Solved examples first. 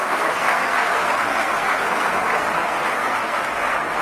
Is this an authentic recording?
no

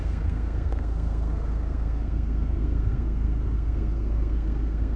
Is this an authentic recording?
no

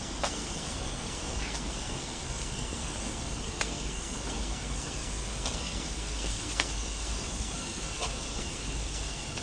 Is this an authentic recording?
no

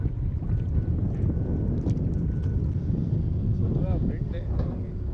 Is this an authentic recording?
yes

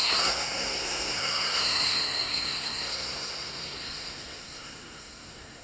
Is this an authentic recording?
no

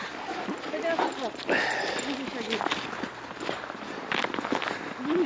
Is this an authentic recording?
yes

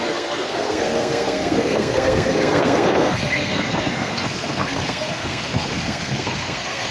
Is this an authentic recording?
no